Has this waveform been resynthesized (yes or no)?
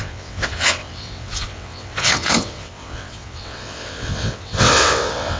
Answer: yes